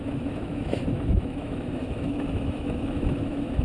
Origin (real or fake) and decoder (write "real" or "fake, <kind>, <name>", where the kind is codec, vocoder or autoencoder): fake, autoencoder, DAC-VAE